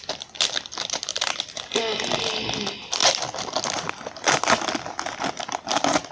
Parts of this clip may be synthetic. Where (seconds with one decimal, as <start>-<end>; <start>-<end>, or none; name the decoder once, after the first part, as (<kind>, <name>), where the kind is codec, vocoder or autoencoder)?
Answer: none